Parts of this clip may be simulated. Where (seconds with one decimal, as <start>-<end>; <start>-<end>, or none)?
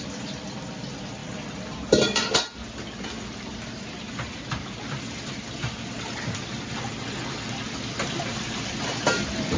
none